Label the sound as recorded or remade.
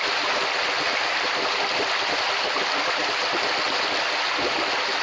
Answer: recorded